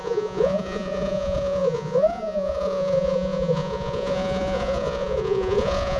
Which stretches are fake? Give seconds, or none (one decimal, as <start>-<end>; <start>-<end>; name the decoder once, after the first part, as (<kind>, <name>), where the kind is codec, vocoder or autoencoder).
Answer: 0.0-6.0 (vocoder, Vocos)